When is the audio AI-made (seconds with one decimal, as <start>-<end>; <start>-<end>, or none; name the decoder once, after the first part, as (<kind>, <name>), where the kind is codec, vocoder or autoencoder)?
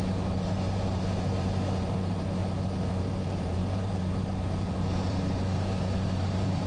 0.0-2.4 (vocoder, BigVGAN v2); 3.0-6.7